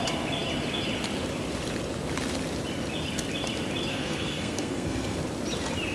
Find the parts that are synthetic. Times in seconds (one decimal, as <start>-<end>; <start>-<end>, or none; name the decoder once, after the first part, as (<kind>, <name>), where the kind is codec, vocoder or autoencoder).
3.9-5.2 (codec, SNAC)